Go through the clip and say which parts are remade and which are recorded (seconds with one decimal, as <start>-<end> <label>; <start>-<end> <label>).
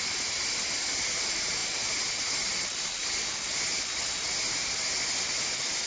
0.0-5.9 recorded